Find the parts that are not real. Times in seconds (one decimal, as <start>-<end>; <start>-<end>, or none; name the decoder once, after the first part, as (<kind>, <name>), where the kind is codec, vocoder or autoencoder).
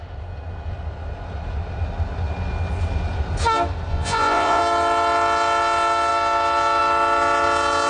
3.9-4.6 (vocoder, Vocos)